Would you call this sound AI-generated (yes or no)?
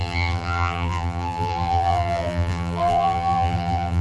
yes